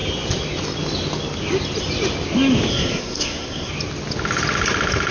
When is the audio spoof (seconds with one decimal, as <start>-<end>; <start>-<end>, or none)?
2.7-3.7